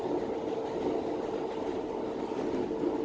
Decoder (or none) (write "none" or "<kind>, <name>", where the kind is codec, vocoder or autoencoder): none